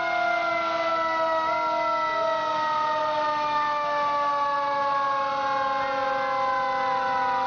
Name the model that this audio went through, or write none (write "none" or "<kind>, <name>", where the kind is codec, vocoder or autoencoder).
none